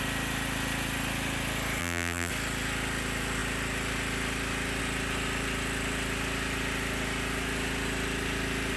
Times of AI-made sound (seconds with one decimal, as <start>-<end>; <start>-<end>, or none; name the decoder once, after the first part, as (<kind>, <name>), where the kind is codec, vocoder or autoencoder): 1.8-2.3 (vocoder, BigVGAN v2)